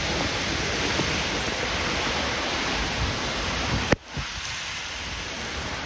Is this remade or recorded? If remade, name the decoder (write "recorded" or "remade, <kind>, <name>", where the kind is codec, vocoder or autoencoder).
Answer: recorded